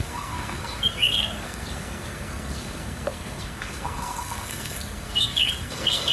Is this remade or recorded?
remade